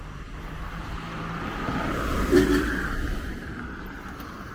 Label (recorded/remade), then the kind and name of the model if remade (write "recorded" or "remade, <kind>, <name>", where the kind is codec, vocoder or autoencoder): remade, vocoder, BigVGAN v2